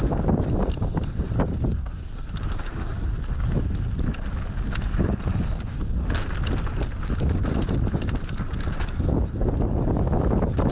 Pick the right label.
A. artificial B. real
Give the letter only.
B